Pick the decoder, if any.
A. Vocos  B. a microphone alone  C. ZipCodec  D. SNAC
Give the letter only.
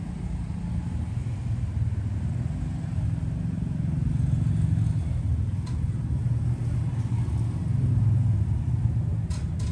B